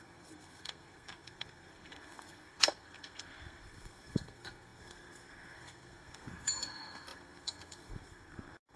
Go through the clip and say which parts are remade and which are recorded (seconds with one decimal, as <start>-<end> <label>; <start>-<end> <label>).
0.0-8.8 remade